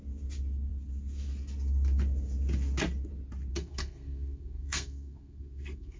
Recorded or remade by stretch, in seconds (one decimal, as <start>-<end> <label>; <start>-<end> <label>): 0.0-3.5 recorded; 3.5-6.0 remade